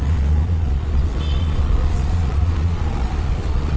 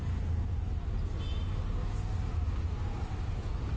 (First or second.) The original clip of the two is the second